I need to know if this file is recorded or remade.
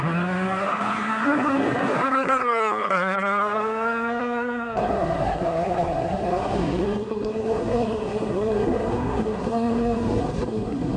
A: remade